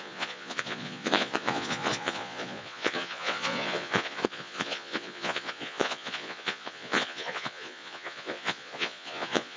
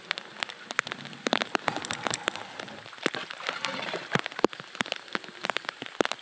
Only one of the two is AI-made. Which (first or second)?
first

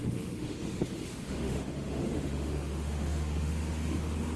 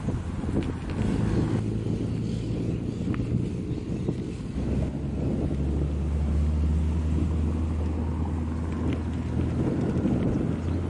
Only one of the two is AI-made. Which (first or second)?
first